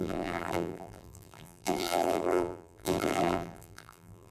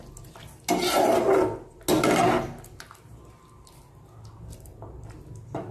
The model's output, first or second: first